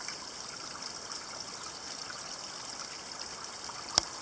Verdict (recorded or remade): recorded